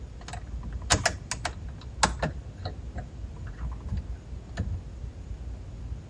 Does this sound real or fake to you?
real